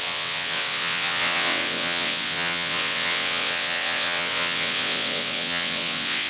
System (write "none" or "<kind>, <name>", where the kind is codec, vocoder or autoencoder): vocoder, WaveNeXt